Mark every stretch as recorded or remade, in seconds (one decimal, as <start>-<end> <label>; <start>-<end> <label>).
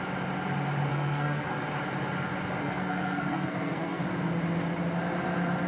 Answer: 0.0-0.9 recorded; 0.9-1.5 remade; 1.5-2.6 recorded; 2.6-4.0 remade; 4.0-5.7 recorded